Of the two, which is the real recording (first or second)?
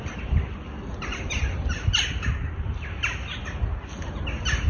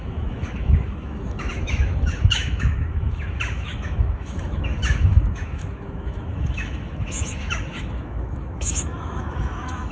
first